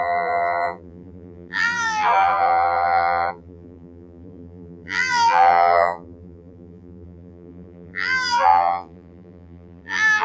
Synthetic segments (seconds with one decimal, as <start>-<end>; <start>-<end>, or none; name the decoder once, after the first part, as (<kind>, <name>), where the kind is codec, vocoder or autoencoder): 0.0-10.2 (vocoder, BigVGAN v2)